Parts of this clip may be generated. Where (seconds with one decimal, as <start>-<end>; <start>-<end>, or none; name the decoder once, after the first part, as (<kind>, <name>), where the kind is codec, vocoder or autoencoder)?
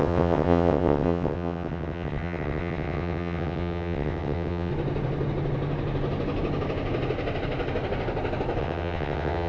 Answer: 0.0-4.7 (vocoder, WaveNeXt); 8.6-9.5